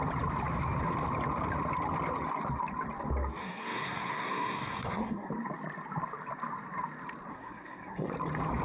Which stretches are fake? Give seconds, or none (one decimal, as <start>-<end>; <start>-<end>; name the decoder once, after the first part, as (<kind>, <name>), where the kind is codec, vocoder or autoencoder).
3.4-5.3 (codec, SNAC); 7.3-8.1